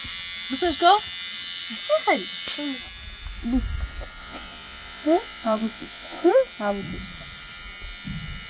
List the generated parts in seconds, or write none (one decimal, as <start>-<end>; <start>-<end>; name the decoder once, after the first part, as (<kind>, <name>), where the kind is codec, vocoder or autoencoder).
4.2-6.3 (vocoder, Vocos)

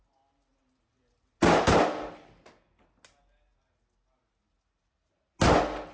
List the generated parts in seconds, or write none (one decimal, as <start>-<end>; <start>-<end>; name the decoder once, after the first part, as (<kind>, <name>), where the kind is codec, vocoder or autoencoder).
none

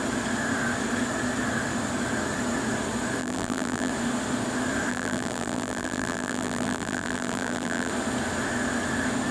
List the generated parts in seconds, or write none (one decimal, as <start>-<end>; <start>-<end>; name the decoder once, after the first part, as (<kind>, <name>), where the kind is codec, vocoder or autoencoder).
3.2-3.9 (vocoder, BigVGAN v2); 4.9-7.9